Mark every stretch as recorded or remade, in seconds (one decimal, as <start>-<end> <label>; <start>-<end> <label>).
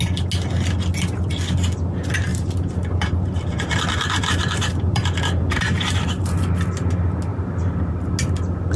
0.0-2.3 recorded; 2.3-6.4 remade; 6.4-7.3 recorded; 7.3-7.8 remade; 7.8-8.8 recorded